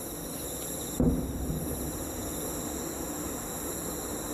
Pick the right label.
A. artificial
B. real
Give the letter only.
B